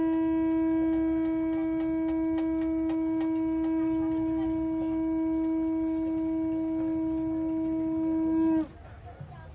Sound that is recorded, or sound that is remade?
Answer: recorded